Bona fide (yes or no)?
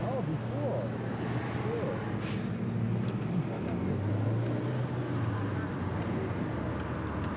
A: yes